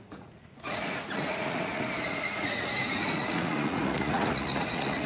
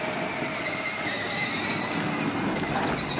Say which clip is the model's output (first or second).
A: first